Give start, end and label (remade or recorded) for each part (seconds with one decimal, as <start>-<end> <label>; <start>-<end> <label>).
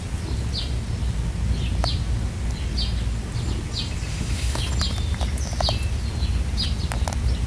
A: 0.0-4.1 recorded; 4.1-4.6 remade; 4.6-7.5 recorded